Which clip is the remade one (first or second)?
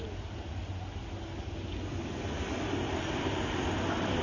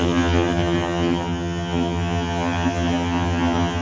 second